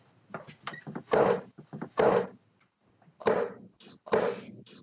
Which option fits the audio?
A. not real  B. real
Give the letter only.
B